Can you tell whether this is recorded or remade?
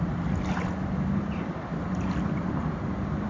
recorded